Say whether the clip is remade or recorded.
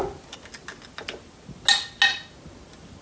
recorded